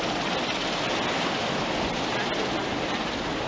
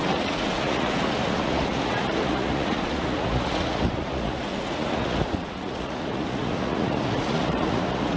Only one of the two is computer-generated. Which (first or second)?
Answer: second